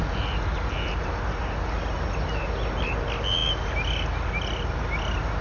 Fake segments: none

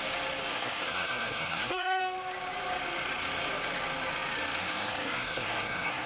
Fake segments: 0.5-2.0; 4.6-6.1

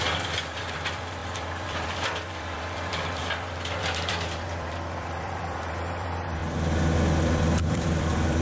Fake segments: 0.0-6.4; 7.2-8.4